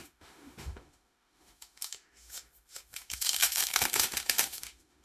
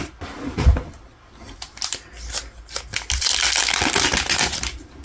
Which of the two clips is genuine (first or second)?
second